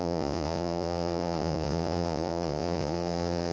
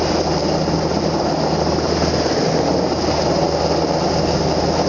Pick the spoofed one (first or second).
first